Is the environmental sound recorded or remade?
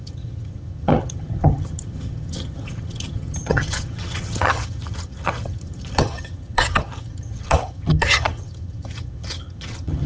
remade